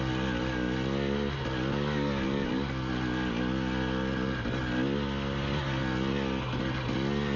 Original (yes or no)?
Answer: yes